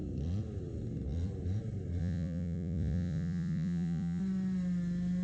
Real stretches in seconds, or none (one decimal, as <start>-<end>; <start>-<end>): 0.0-2.0; 4.2-5.2